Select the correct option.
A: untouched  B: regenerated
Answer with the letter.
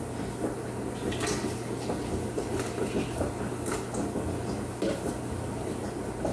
A